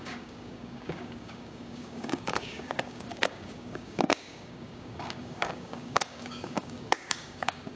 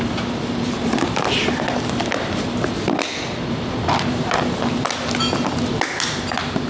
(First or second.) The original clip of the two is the second